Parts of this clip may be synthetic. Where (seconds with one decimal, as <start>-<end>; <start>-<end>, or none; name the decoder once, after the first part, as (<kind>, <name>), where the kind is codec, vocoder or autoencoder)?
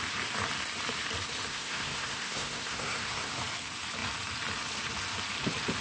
1.5-3.3 (codec, SNAC)